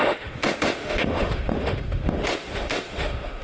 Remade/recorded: remade